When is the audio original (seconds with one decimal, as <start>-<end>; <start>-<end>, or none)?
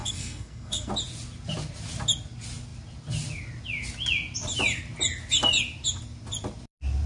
0.9-7.1